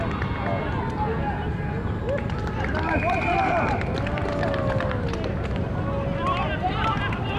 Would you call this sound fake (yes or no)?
no